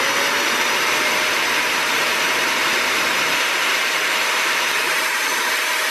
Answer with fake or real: fake